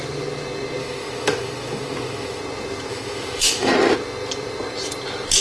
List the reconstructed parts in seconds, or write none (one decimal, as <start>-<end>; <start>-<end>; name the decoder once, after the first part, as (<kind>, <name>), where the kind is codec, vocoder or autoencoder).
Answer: 0.8-2.4 (autoencoder, DAC-VAE); 2.9-3.7